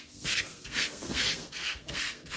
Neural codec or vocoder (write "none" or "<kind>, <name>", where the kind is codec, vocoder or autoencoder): codec, SNAC